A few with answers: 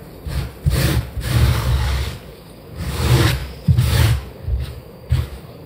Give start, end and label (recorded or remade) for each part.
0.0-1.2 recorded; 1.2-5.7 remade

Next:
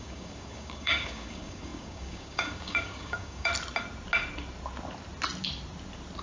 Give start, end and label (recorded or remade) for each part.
0.0-3.5 remade; 3.5-6.2 recorded

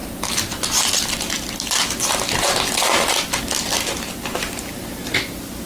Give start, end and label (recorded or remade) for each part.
0.0-5.7 recorded